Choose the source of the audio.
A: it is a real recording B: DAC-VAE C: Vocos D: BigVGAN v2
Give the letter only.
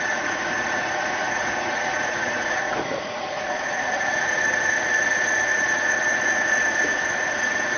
C